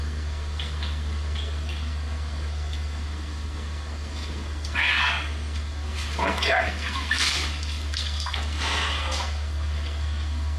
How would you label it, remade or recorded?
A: remade